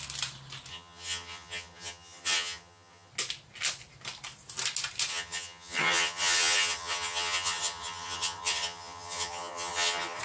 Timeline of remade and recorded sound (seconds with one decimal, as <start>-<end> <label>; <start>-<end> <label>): 0.0-0.7 recorded; 0.7-3.1 remade; 3.1-5.1 recorded; 5.1-10.2 remade